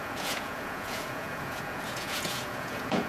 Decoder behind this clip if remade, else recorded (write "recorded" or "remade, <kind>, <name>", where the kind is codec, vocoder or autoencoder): remade, vocoder, Vocos